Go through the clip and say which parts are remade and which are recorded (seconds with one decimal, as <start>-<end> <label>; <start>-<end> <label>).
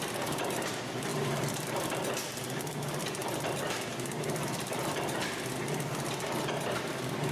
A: 0.0-7.3 remade